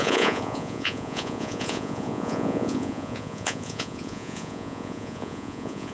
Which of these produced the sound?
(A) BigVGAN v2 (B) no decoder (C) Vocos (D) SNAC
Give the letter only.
C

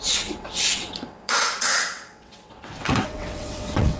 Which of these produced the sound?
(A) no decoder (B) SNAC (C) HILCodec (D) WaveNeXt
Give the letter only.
D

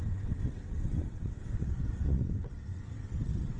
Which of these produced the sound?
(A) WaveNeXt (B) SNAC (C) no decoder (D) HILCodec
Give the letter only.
A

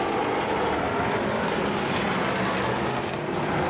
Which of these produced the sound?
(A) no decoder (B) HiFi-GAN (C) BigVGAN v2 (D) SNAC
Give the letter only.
C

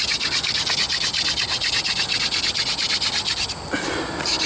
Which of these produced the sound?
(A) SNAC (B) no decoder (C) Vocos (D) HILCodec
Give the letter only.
B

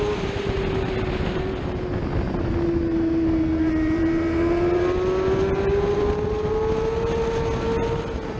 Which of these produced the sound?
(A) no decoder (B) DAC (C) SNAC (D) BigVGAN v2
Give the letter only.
A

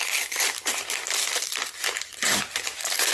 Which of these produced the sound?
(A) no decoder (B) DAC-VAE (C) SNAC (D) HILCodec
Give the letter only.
A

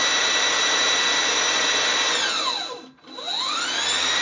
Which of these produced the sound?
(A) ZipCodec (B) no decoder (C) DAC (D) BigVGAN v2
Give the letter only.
B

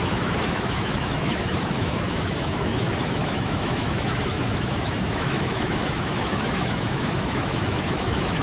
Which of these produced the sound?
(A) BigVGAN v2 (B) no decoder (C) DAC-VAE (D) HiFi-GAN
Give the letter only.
C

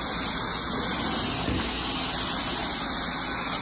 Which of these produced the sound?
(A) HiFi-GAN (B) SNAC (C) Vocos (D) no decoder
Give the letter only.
D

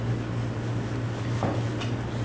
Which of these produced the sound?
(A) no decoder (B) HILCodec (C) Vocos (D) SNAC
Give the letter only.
A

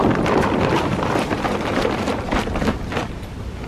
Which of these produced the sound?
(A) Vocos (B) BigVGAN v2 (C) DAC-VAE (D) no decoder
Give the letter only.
D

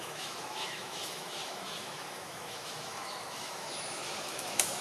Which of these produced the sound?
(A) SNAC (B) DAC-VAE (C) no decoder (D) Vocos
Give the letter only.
B